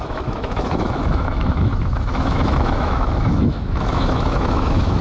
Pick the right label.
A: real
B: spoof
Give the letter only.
B